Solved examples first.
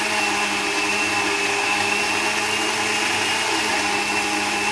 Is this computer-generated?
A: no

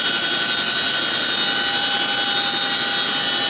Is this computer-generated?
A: no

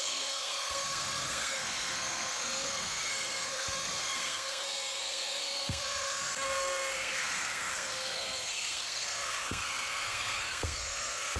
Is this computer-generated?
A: yes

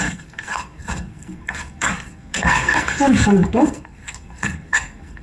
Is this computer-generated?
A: yes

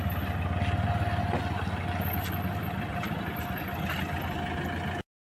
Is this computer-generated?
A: no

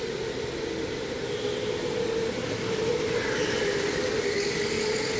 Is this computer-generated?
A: no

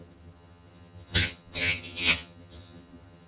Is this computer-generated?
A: yes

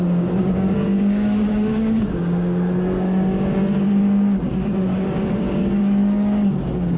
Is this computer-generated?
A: yes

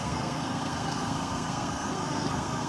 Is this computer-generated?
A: yes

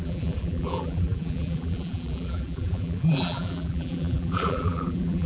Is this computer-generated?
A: yes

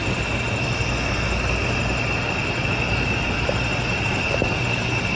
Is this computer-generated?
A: no